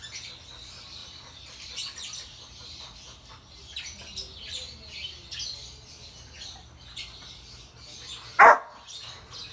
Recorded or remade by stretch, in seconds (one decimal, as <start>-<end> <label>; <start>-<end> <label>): 0.0-1.0 recorded; 1.0-2.5 remade; 2.5-9.5 recorded